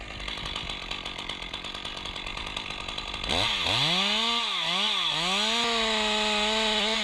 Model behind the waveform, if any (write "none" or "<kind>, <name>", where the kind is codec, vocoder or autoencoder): none